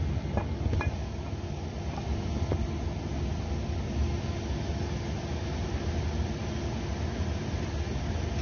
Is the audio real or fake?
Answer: real